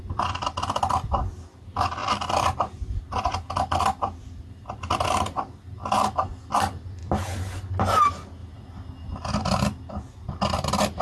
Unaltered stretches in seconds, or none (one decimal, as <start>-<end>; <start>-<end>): 0.0-11.0